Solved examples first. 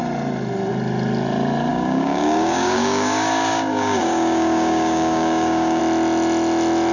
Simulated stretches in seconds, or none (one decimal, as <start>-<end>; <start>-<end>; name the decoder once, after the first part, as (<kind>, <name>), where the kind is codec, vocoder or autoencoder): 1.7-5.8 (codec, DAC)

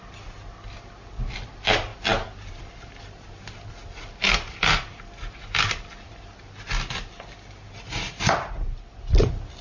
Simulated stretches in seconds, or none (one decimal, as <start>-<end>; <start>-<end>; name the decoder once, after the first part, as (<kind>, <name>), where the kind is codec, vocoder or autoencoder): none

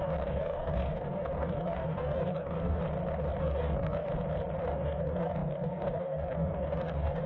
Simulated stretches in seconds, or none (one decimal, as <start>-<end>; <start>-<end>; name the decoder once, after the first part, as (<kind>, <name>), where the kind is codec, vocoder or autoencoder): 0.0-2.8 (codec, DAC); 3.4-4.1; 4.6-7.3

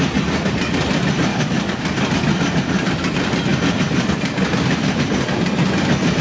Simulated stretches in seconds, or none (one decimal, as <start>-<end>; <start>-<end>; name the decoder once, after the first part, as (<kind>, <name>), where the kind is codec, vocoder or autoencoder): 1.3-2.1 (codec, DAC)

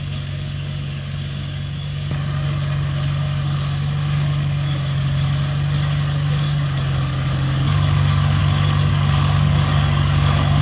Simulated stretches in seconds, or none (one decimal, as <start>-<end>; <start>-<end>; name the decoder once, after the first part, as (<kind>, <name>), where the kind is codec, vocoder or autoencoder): 0.0-10.6 (codec, DAC)

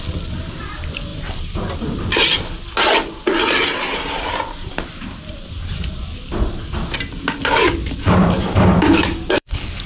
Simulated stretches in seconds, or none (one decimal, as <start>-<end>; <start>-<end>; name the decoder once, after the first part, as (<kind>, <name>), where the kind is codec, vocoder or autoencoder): 7.4-9.9 (codec, DAC)